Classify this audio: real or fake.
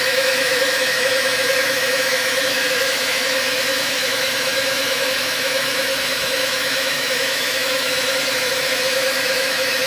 fake